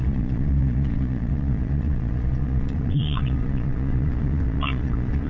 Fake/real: fake